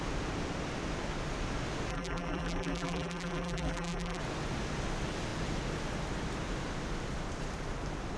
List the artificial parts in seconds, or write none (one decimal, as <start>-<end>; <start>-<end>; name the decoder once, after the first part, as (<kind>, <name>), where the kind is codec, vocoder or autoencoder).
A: 1.9-4.2 (vocoder, BigVGAN v2)